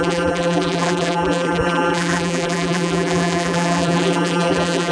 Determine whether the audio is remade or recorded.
remade